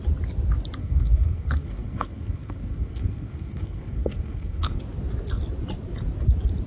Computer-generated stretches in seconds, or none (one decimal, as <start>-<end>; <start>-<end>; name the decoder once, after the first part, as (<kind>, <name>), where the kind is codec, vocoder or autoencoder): 0.8-4.8 (codec, SNAC)